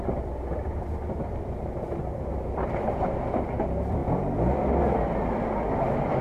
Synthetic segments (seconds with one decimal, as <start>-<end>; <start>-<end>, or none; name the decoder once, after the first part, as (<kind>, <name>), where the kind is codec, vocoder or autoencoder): 0.0-4.0 (vocoder, BigVGAN v2); 4.8-6.2